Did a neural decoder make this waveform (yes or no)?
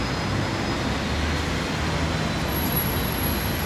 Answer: no